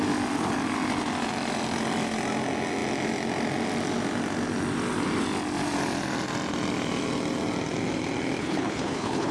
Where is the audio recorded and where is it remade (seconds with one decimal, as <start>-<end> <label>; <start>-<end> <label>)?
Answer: 0.0-8.4 recorded; 8.4-9.3 remade